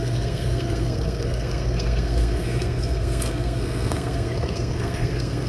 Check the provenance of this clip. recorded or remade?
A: remade